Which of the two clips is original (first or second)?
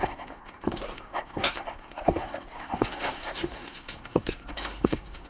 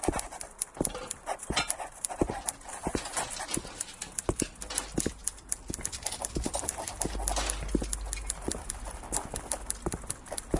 second